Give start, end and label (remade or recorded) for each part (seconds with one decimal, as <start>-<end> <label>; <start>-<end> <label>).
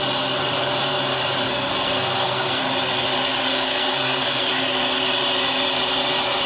0.0-1.5 recorded; 1.5-2.6 remade; 2.6-3.5 recorded; 3.5-4.5 remade; 4.5-6.5 recorded